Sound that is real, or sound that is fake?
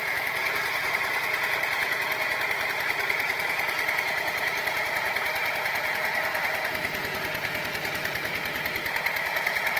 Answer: fake